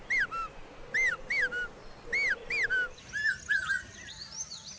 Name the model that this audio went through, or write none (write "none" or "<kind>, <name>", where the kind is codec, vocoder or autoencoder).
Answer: none